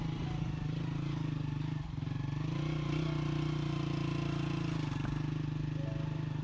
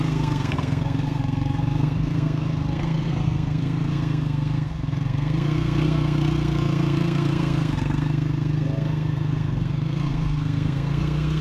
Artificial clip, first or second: second